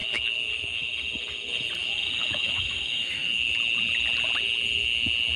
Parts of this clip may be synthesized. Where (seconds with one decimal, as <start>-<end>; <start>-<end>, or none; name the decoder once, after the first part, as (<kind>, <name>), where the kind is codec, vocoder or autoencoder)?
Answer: 0.0-0.9 (autoencoder, DAC-VAE); 1.8-3.5